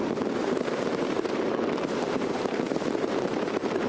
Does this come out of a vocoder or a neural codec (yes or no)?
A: yes